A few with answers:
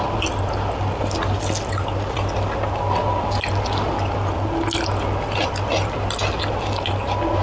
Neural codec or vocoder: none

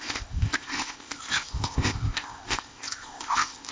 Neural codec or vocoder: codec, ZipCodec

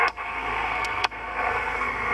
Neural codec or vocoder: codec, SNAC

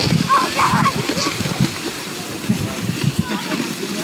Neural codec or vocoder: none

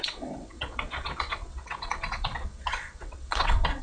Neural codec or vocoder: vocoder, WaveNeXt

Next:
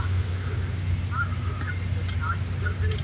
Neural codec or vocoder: none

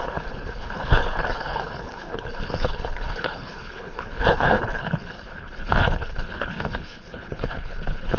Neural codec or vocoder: codec, HILCodec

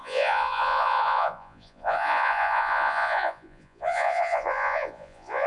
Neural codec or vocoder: vocoder, Vocos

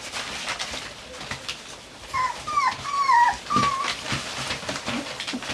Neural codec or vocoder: none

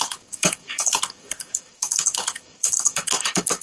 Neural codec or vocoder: codec, DAC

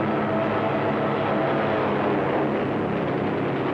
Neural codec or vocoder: none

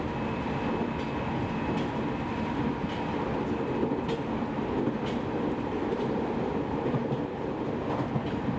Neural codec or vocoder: none